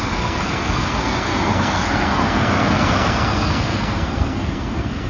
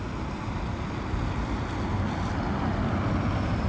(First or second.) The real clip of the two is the second